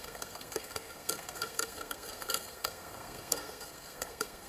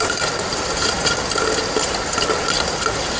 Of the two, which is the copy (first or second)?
first